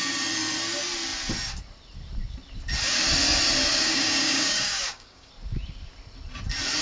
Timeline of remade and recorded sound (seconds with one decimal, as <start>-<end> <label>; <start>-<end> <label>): 0.0-3.7 recorded; 3.7-5.3 remade; 5.3-6.8 recorded